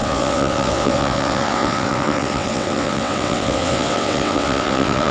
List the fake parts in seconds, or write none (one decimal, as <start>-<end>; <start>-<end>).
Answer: 0.0-5.1